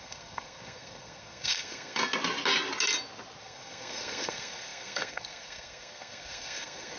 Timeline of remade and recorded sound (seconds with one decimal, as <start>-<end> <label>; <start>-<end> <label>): 0.0-2.0 remade; 2.0-3.4 recorded; 3.4-7.0 remade